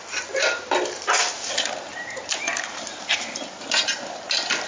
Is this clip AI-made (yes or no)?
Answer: no